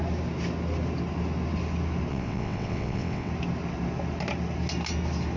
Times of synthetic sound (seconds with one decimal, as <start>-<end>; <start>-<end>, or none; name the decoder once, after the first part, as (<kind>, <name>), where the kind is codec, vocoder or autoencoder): 2.1-3.3 (vocoder, WaveNeXt)